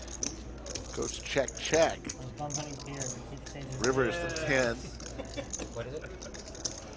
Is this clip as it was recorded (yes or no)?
yes